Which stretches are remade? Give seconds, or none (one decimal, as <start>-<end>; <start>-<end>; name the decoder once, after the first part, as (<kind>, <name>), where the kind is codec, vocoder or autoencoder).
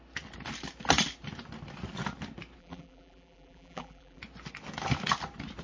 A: 2.6-4.2 (vocoder, BigVGAN v2)